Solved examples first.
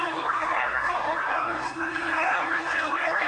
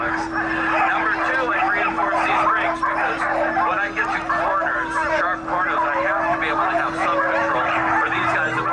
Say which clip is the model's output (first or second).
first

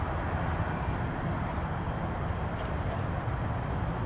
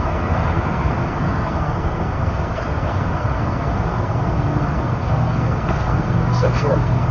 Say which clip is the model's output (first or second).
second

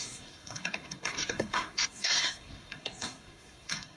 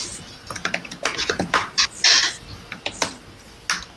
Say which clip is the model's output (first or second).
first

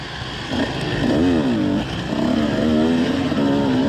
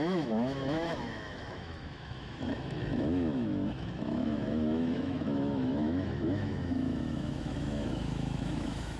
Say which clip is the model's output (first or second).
second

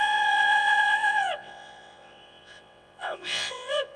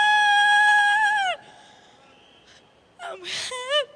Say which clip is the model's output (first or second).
first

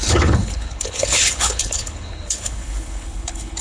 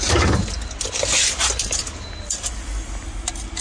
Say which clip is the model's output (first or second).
first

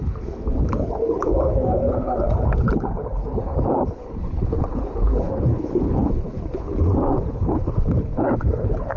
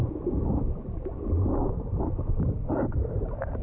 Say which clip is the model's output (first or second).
first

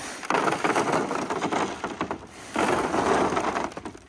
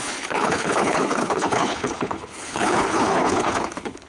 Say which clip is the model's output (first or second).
second